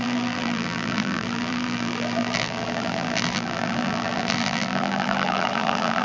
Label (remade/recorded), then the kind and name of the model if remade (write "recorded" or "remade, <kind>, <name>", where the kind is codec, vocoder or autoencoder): remade, vocoder, BigVGAN v2